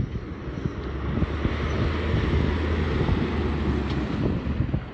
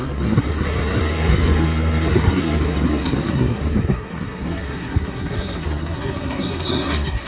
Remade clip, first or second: second